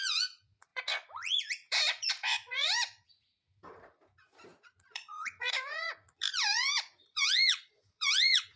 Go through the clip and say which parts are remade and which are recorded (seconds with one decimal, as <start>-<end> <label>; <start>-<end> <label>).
0.0-8.6 remade